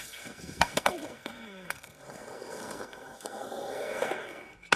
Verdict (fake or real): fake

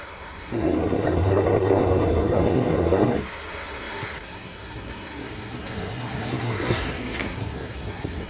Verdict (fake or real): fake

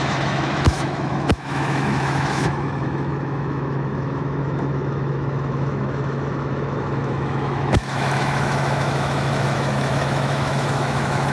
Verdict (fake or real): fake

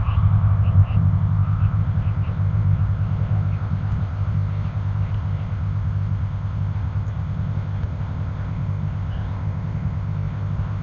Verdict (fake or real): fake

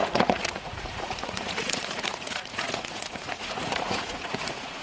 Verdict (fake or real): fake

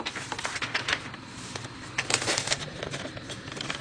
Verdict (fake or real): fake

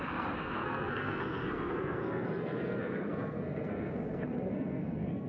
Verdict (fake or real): fake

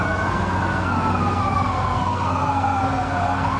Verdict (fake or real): fake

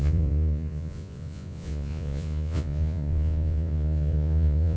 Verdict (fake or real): fake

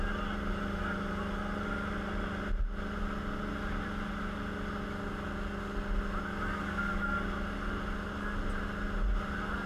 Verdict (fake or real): real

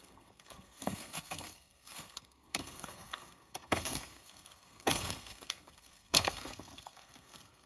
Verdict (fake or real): fake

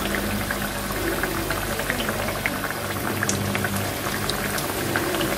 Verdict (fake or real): real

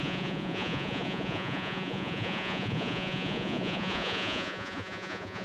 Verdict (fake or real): fake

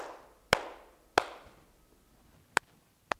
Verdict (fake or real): real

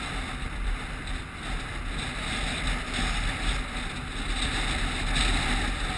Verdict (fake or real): real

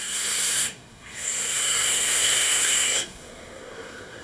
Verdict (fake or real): fake